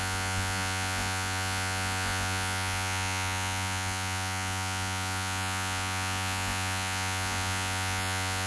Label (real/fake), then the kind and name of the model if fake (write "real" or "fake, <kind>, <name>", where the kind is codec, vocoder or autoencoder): fake, vocoder, Vocos